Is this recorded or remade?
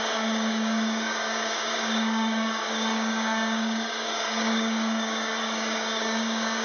remade